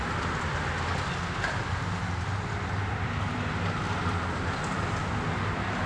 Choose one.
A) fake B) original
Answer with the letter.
B